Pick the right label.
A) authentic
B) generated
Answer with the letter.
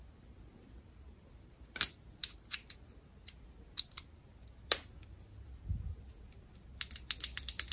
A